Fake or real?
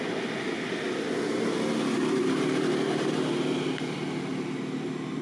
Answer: real